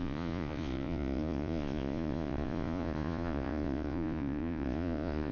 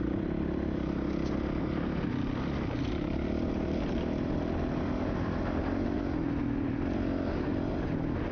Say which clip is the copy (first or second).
first